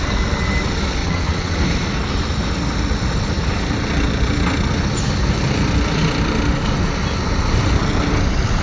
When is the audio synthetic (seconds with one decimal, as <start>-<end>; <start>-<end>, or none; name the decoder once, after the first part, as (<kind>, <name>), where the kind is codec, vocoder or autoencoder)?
1.0-1.6 (vocoder, WaveNeXt)